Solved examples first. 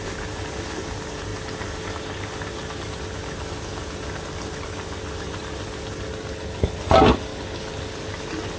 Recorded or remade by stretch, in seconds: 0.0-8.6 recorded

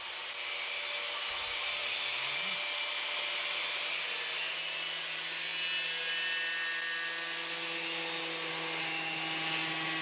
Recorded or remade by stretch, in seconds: 0.0-10.0 recorded

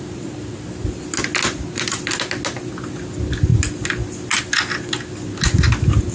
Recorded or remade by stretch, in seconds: 0.0-6.1 recorded

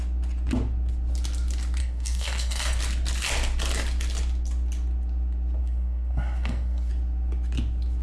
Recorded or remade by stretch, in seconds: 0.0-1.8 recorded; 1.8-2.8 remade; 2.8-5.6 recorded; 5.6-6.9 remade; 6.9-8.0 recorded

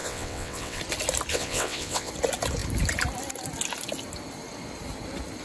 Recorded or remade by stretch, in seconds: 0.0-0.8 remade; 0.8-1.3 recorded; 1.3-2.1 remade; 2.1-5.4 recorded

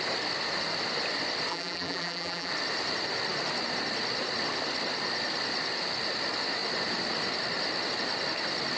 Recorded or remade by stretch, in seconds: 0.0-1.5 recorded; 1.5-2.5 remade; 2.5-8.8 recorded